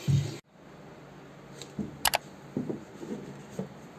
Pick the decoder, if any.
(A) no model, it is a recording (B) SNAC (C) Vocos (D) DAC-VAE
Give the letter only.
A